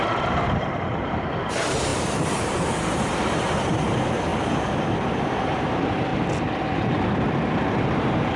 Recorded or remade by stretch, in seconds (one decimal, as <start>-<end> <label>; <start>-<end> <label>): 0.0-4.3 remade; 4.3-5.2 recorded; 5.2-6.1 remade; 6.1-7.5 recorded; 7.5-8.4 remade